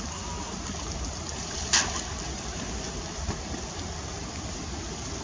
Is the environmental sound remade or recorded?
recorded